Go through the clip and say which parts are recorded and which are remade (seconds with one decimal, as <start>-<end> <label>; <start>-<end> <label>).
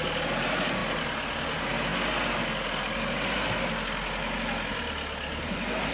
0.0-5.9 recorded